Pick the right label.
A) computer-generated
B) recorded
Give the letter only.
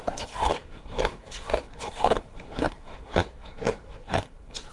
A